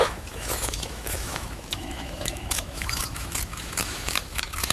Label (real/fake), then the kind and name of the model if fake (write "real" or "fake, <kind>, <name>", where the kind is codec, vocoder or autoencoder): fake, autoencoder, DAC-VAE